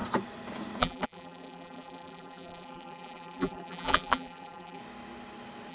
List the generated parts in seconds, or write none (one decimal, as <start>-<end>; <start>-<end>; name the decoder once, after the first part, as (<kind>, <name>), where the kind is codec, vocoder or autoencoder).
0.8-4.8 (vocoder, BigVGAN v2)